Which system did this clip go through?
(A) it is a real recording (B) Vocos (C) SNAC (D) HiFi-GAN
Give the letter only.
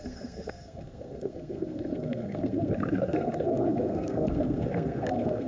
C